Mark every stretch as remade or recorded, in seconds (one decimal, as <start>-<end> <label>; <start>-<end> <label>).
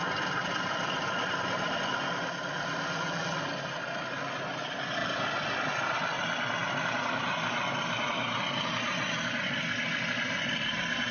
0.0-11.1 recorded